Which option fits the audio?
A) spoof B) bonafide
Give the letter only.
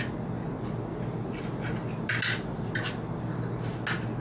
B